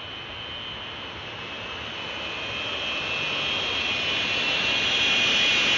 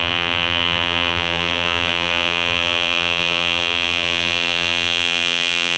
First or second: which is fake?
second